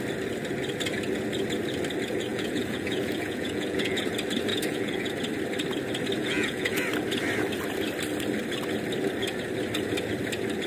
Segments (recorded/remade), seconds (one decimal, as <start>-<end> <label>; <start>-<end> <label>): 0.0-2.3 recorded; 2.3-4.1 remade; 4.1-4.5 recorded; 4.5-5.1 remade; 5.1-6.2 recorded; 6.2-6.8 remade; 6.8-10.7 recorded